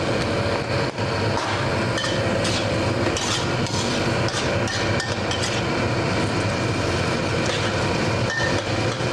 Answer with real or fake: real